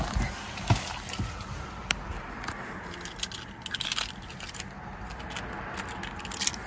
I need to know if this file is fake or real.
real